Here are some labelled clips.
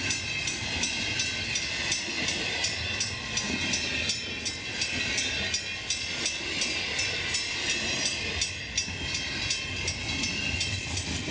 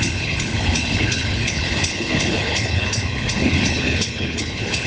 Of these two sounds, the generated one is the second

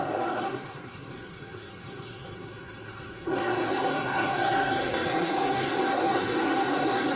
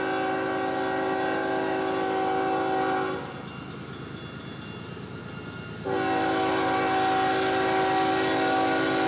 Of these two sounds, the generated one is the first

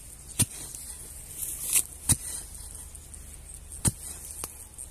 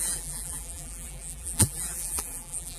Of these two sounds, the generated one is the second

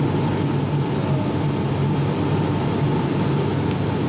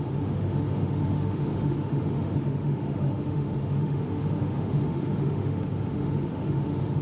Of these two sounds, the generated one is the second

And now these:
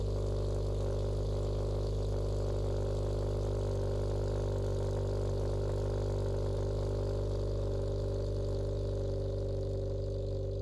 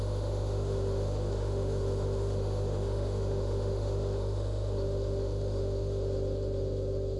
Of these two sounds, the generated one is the second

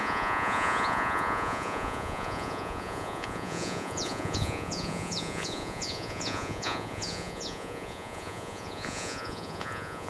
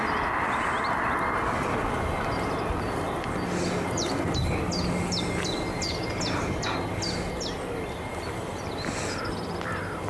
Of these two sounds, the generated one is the first